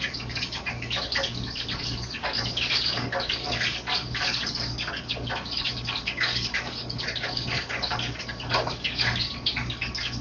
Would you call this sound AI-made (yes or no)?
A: yes